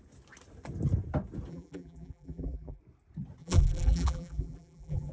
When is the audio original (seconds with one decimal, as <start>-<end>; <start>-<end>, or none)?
0.0-1.5; 2.8-3.4